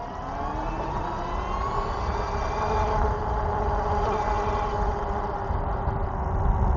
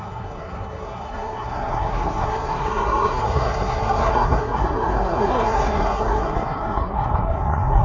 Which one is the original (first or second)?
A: first